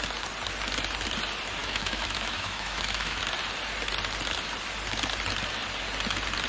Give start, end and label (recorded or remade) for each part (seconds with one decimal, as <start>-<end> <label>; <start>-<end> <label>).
0.0-1.6 recorded; 1.6-3.2 remade; 3.2-6.5 recorded